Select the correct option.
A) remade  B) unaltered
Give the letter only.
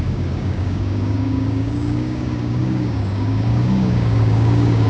A